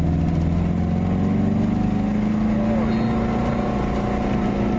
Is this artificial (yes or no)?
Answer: no